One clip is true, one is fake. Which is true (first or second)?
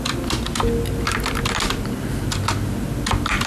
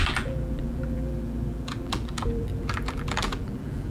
first